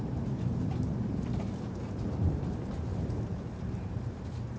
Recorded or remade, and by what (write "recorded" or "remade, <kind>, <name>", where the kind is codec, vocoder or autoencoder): remade, vocoder, BigVGAN v2